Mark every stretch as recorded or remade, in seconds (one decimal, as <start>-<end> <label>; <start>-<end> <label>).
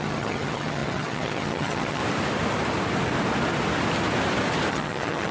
0.0-2.0 remade; 2.0-4.7 recorded; 4.7-5.3 remade